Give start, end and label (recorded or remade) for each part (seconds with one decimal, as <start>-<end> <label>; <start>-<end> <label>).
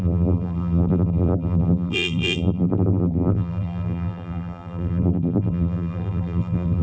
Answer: 0.0-6.8 remade